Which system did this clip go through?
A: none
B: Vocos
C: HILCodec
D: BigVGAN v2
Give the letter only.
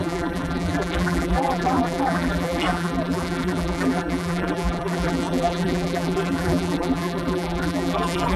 D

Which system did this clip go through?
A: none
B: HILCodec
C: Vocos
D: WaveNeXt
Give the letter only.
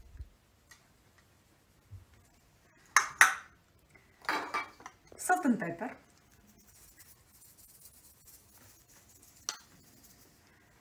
A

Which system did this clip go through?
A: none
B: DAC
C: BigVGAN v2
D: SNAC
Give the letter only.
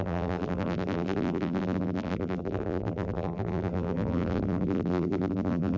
C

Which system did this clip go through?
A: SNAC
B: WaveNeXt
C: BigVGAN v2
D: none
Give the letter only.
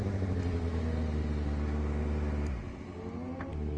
D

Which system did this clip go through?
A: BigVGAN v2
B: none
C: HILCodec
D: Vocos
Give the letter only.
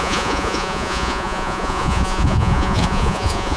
D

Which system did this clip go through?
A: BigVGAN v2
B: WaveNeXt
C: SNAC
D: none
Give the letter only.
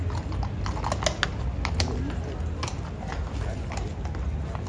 D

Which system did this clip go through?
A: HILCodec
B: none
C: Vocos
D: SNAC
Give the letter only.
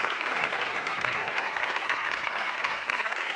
D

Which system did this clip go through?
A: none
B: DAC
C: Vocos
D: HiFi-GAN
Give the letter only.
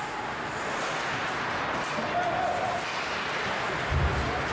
A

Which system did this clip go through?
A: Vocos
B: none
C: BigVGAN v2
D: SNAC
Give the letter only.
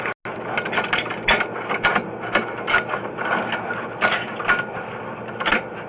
B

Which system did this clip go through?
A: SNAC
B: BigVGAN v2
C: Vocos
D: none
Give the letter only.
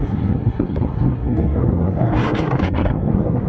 A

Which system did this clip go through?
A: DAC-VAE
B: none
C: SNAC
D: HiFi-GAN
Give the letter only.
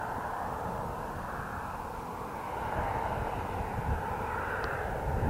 B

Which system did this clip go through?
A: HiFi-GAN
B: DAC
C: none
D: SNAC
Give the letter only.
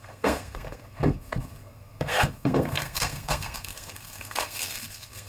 D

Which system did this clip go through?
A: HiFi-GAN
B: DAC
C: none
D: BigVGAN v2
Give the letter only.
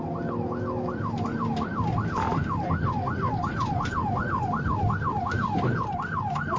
C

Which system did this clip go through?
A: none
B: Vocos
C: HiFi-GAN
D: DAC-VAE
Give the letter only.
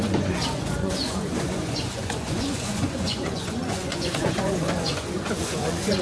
B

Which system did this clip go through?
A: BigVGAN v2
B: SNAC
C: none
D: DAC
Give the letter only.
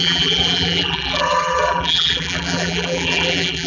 A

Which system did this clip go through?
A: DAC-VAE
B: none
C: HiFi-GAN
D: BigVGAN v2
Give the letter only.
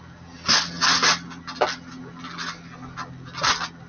B